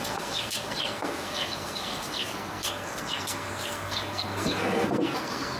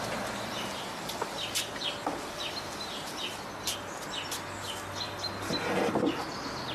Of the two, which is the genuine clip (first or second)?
second